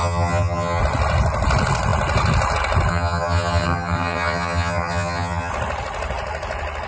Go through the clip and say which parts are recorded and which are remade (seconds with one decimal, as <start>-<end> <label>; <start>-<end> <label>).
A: 0.0-0.8 remade; 0.8-2.9 recorded; 2.9-5.5 remade; 5.5-6.9 recorded